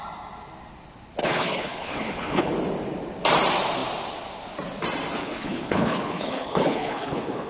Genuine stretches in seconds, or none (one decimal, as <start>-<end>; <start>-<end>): 0.0-1.2; 2.5-5.2